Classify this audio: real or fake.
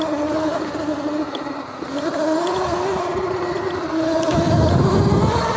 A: real